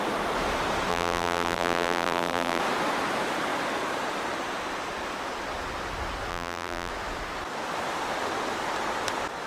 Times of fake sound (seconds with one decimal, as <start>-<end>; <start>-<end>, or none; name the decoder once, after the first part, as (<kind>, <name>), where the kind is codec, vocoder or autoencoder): 0.9-2.6 (vocoder, BigVGAN v2); 6.3-6.9